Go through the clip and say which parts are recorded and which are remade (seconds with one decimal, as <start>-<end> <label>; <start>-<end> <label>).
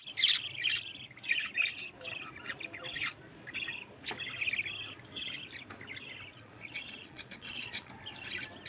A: 0.0-6.3 recorded; 6.3-7.9 remade; 7.9-8.7 recorded